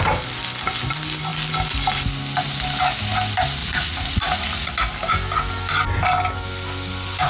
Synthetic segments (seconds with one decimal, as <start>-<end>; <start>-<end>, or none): 3.6-4.7